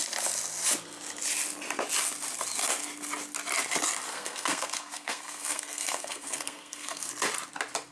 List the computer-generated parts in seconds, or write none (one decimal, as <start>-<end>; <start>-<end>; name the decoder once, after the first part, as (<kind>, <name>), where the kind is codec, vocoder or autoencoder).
4.1-7.1 (codec, SNAC)